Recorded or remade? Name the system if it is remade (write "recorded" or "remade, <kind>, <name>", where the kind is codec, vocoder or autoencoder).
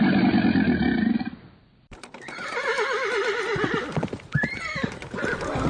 remade, vocoder, BigVGAN v2